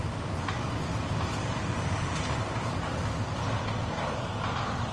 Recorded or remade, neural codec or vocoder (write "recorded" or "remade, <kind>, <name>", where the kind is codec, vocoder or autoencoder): recorded